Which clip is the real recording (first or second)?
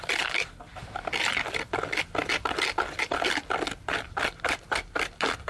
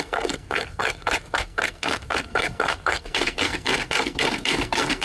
first